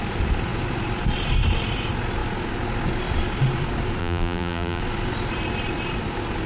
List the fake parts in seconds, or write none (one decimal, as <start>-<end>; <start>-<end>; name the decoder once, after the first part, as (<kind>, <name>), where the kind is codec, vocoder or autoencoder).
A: 4.0-4.8 (vocoder, BigVGAN v2)